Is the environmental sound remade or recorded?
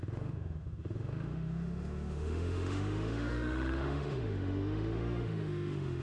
remade